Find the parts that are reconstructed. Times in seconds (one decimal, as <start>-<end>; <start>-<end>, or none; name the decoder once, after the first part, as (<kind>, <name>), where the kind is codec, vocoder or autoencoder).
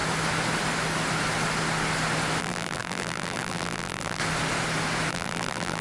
2.4-4.2 (vocoder, BigVGAN v2); 5.1-5.8